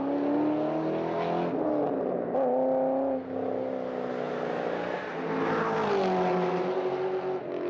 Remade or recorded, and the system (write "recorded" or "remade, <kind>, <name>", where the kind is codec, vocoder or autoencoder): recorded